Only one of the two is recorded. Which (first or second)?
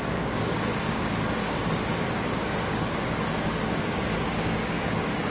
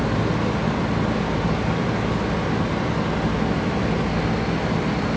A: second